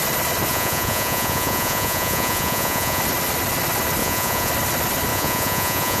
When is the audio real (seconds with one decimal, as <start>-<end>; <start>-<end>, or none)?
0.0-0.5; 3.0-4.0; 4.5-5.1